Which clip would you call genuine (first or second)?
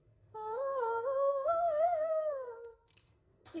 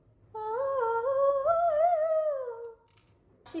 second